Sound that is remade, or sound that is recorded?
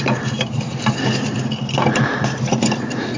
recorded